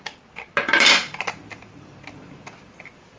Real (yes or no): yes